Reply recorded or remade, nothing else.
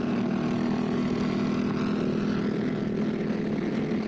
recorded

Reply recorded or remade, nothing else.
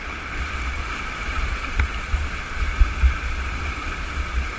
remade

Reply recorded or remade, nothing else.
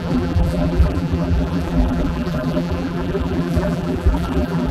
remade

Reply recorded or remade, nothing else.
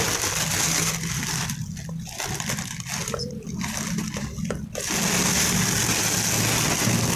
recorded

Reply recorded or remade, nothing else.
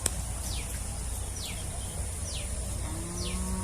recorded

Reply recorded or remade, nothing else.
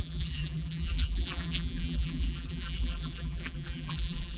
remade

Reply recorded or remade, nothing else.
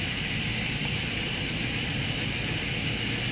recorded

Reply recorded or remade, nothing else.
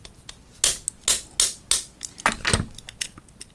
recorded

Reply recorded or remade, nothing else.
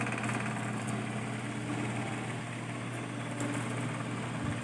recorded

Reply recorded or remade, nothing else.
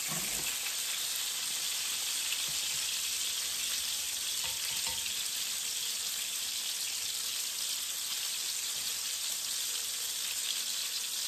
recorded